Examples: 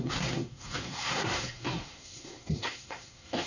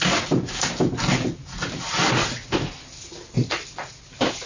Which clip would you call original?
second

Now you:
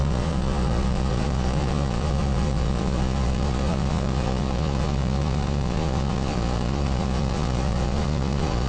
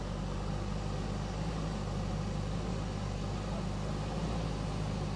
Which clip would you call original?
second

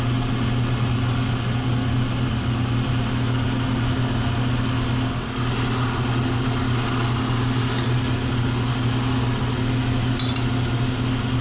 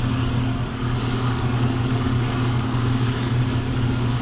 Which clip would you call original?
first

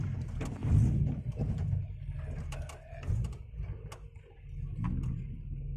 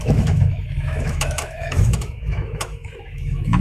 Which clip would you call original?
first